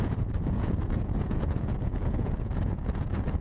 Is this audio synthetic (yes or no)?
yes